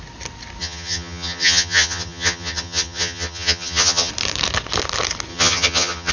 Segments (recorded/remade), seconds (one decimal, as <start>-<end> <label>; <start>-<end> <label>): 0.0-0.6 recorded; 0.6-4.1 remade; 4.1-5.3 recorded; 5.3-6.1 remade